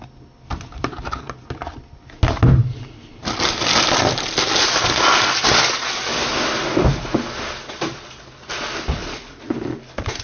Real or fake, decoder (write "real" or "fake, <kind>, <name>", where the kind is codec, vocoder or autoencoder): real